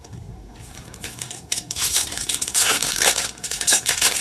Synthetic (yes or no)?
yes